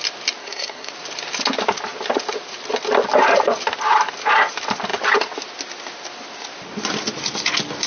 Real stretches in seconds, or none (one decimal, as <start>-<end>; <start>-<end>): 0.0-0.4; 0.9-7.9